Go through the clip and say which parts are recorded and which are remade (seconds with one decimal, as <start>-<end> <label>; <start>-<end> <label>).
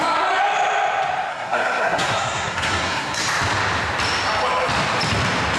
0.0-1.3 recorded; 1.3-3.2 remade; 3.2-5.6 recorded